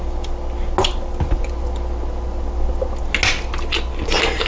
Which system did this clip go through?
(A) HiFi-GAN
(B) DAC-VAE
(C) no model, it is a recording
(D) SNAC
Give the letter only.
C